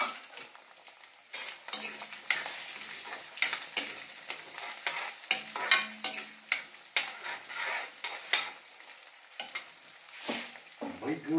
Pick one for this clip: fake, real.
real